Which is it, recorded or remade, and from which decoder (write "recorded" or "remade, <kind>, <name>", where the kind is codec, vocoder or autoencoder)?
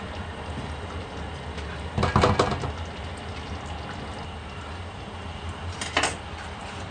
recorded